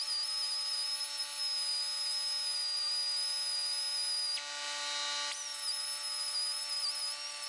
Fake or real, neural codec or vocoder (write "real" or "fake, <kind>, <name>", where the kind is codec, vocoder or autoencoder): real